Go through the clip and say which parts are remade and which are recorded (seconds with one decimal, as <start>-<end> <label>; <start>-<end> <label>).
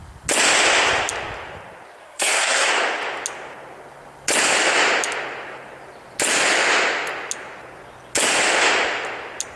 0.0-2.0 recorded; 2.0-2.7 remade; 2.7-9.6 recorded